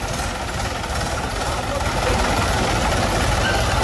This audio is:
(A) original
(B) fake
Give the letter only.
A